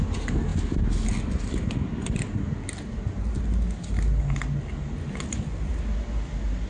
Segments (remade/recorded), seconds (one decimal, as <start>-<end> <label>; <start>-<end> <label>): 0.0-6.7 recorded